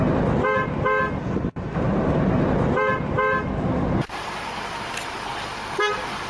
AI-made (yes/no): no